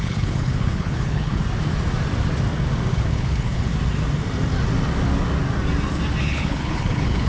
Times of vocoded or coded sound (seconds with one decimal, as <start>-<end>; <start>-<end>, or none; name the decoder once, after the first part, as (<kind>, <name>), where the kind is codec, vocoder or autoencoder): 0.0-1.4 (codec, HILCodec); 2.9-3.7; 6.2-7.3